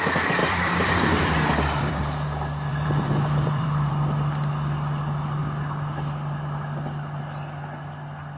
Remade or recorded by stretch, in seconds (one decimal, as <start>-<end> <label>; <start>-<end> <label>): 0.0-0.4 recorded; 0.4-3.9 remade; 3.9-8.4 recorded